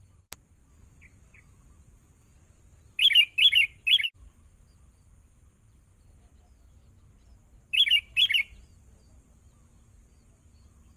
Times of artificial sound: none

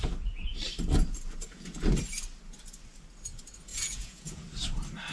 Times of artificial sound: 3.7-4.4 (vocoder, Vocos)

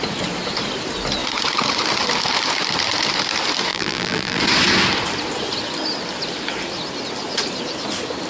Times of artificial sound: 3.7-4.4 (vocoder, BigVGAN v2)